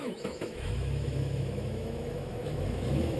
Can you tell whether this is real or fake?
fake